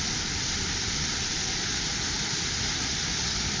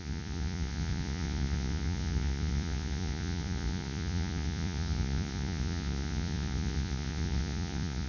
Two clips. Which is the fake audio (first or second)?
second